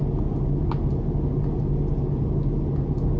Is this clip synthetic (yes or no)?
no